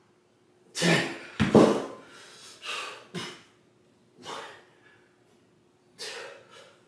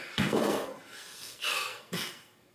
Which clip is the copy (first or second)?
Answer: second